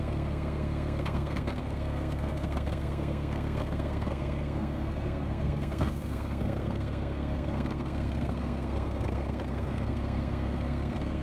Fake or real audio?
fake